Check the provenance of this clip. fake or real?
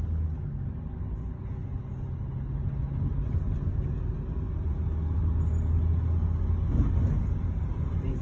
real